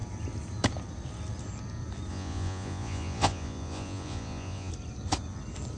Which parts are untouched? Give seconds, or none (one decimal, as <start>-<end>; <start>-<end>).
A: 0.0-2.1; 4.7-5.8